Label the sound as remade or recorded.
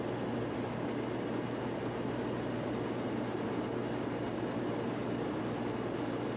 recorded